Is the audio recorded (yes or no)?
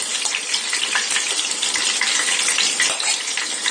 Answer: yes